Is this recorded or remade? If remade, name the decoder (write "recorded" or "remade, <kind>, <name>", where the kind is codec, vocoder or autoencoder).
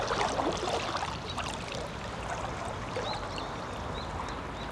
recorded